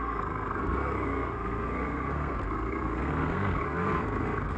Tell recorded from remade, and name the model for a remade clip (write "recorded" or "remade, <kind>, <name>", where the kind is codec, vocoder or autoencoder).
remade, codec, SNAC